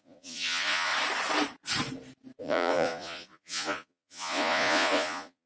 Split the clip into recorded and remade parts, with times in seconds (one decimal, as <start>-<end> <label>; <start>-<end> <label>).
0.0-0.9 remade; 0.9-2.4 recorded; 2.4-5.5 remade